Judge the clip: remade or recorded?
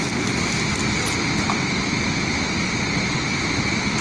recorded